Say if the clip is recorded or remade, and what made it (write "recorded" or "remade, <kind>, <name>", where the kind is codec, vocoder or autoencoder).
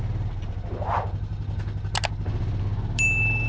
recorded